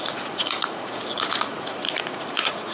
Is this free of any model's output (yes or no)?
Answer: no